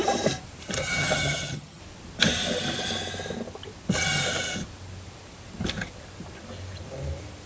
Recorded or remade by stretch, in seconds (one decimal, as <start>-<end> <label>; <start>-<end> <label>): 0.0-0.8 recorded; 0.8-1.8 remade; 1.8-7.5 recorded